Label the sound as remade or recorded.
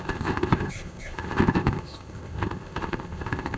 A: remade